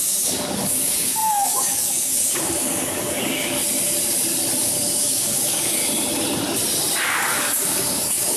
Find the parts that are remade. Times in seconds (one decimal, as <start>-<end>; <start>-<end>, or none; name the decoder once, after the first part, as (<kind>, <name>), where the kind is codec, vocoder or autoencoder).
0.0-3.6 (codec, DAC); 4.6-5.8; 7.0-8.4